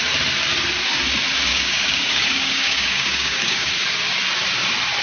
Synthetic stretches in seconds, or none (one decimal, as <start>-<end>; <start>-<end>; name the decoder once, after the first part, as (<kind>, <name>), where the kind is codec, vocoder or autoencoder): 1.5-3.7 (codec, DAC)